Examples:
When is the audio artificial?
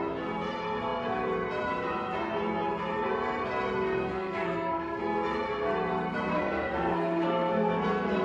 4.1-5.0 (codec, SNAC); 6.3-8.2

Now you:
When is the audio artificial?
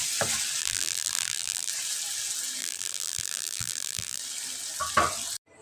0.6-1.7 (vocoder, BigVGAN v2); 2.6-4.2